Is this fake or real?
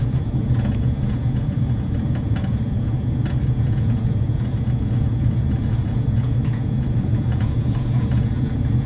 fake